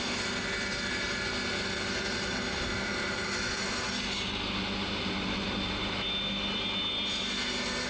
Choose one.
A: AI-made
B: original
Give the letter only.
B